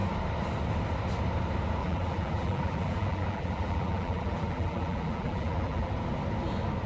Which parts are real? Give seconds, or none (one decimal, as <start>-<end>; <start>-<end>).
0.0-1.8; 5.9-6.9